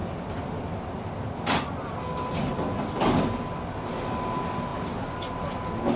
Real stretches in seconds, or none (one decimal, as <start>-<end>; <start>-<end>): 0.0-6.0